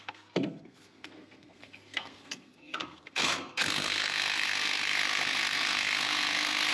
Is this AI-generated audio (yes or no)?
yes